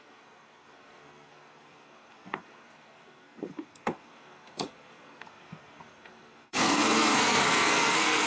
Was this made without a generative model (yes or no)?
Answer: no